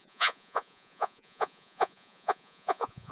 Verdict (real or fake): fake